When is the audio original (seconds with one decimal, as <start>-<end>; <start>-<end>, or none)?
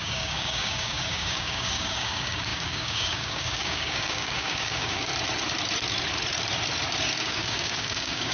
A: 5.1-7.2